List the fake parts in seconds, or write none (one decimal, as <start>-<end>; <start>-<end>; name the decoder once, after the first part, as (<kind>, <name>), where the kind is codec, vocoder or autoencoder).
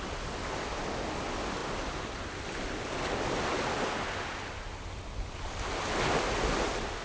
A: none